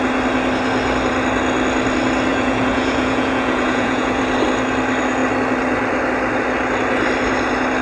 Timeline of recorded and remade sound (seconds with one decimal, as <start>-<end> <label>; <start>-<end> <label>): 0.0-2.3 recorded; 2.3-4.2 remade; 4.2-7.8 recorded